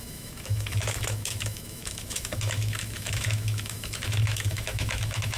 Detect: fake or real fake